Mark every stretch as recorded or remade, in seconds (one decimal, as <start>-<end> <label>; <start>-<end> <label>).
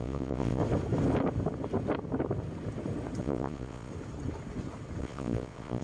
0.0-0.6 remade; 0.6-3.2 recorded; 3.2-3.9 remade; 3.9-5.0 recorded; 5.0-5.8 remade